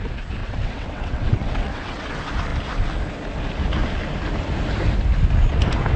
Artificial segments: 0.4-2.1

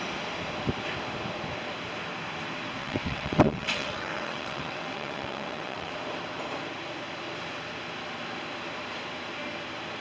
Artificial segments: 2.8-5.9

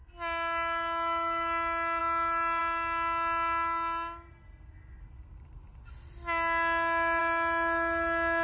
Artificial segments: none

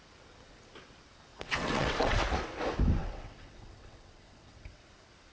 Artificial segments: 1.3-2.2; 3.0-4.8

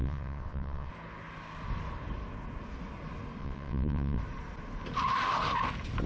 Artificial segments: 0.0-0.9; 3.4-4.2

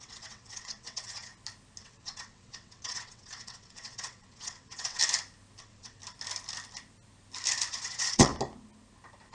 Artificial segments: 0.0-1.3; 1.8-5.0; 5.6-6.0; 7.7-8.3

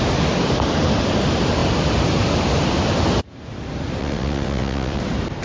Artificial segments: 4.0-5.0

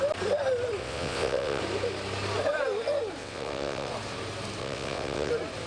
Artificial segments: 0.8-1.6; 3.2-3.9; 4.6-5.3